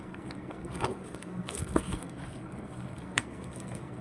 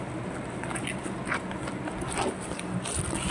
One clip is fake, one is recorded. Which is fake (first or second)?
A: first